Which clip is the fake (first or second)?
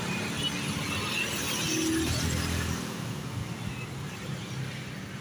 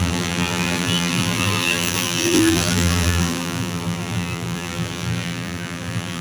second